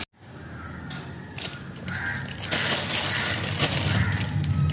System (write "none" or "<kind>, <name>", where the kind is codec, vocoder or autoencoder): none